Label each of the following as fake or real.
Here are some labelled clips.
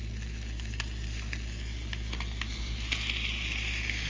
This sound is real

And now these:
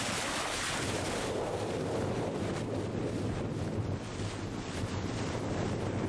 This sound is real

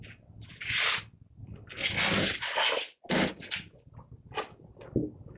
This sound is real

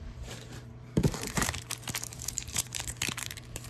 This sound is fake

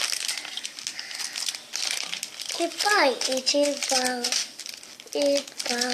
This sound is real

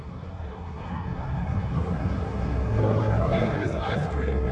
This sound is fake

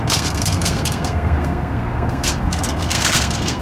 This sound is fake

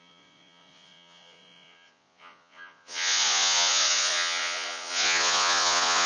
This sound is fake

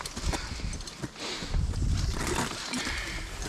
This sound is real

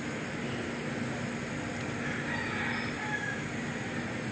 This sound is real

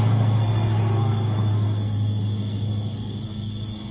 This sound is fake